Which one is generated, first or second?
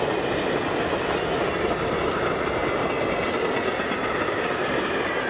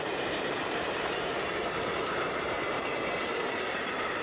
second